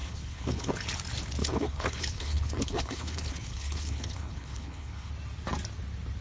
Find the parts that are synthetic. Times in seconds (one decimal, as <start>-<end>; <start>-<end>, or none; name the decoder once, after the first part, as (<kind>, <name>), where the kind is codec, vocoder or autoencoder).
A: 0.0-0.7 (codec, HILCodec); 1.4-5.1